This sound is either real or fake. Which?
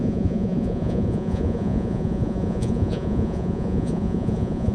fake